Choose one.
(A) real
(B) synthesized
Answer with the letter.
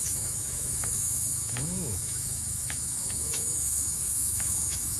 B